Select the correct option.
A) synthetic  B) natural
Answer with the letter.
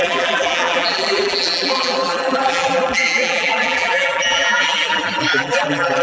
A